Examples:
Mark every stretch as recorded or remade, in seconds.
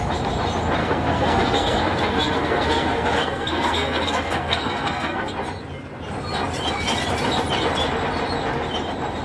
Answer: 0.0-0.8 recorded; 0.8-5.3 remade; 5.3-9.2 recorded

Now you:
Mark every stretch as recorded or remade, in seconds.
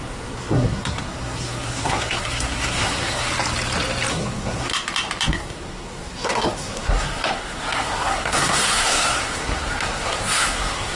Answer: 0.0-3.3 remade; 3.3-4.1 recorded; 4.1-4.7 remade; 4.7-5.3 recorded; 5.3-11.0 remade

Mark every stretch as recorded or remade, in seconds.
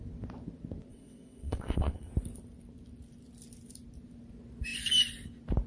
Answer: 0.0-0.9 recorded; 0.9-2.1 remade; 2.1-5.7 recorded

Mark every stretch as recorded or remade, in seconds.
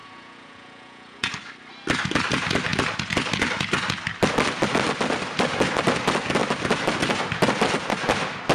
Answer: 0.0-1.3 remade; 1.3-8.5 recorded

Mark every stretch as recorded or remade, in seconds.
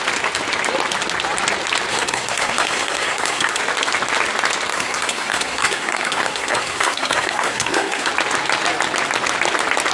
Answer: 0.0-1.9 recorded; 1.9-3.6 remade; 3.6-4.7 recorded; 4.7-8.1 remade; 8.1-9.9 recorded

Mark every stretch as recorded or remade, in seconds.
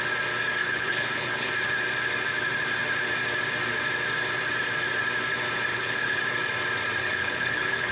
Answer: 0.0-0.6 recorded; 0.6-1.5 remade; 1.5-5.7 recorded; 5.7-6.2 remade; 6.2-7.0 recorded; 7.0-7.9 remade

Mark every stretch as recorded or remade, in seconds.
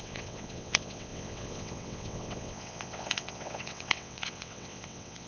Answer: 0.0-5.3 remade